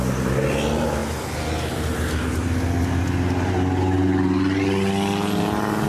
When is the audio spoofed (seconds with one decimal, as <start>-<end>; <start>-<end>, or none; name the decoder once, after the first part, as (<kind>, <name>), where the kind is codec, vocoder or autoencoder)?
none